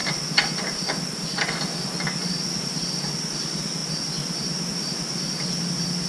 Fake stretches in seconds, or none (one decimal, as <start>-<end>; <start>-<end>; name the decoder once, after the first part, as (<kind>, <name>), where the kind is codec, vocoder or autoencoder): none